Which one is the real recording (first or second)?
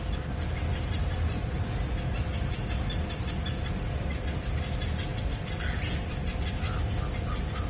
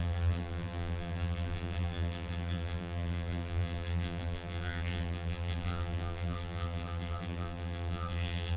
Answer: first